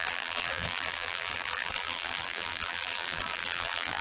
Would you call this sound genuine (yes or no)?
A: no